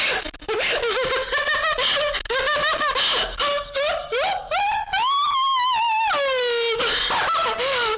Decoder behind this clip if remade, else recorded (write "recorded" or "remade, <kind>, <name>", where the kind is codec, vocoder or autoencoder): recorded